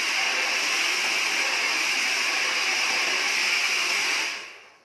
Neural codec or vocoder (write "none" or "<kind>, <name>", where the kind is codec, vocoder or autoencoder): none